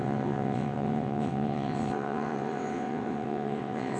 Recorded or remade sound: remade